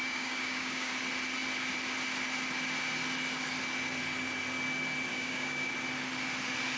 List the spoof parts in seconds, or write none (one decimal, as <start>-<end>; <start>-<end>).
0.0-0.9; 5.1-5.7